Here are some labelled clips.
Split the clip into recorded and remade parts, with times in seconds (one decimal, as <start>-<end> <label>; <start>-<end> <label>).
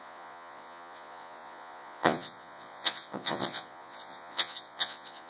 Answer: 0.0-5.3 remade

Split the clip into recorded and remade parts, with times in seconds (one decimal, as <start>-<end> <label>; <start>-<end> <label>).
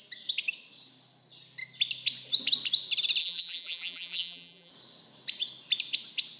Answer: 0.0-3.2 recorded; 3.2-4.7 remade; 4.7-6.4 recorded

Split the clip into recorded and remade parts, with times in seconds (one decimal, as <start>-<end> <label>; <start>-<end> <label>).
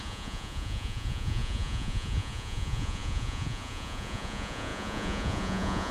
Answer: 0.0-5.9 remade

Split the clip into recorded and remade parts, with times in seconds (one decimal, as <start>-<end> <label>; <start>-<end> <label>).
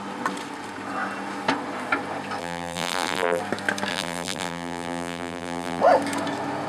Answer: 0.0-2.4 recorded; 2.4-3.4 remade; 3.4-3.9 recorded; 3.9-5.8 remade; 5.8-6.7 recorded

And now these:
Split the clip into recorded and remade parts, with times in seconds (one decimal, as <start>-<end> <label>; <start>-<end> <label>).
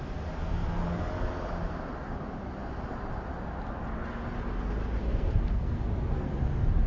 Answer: 0.0-5.0 recorded; 5.0-6.3 remade; 6.3-6.9 recorded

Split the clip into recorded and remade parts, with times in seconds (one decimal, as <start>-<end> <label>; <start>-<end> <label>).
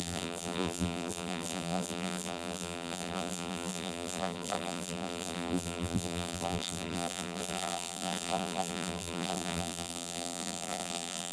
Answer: 0.0-11.3 remade